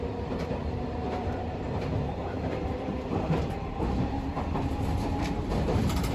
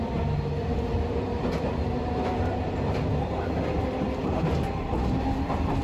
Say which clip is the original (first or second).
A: second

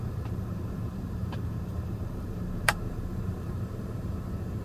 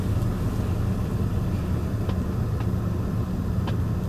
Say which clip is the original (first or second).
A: second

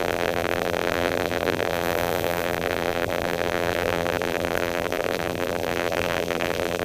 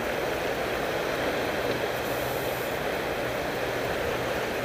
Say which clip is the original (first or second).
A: second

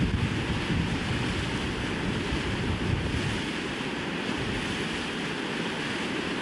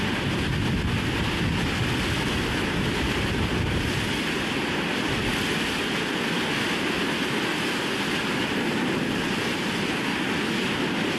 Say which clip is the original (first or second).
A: second